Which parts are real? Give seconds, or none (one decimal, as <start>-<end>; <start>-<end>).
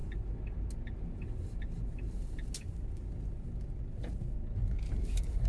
0.0-5.5